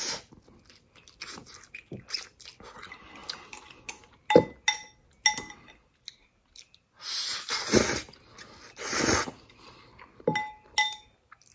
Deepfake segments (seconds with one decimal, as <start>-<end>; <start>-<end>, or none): none